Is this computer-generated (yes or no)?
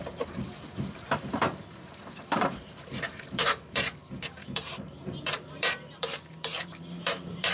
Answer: yes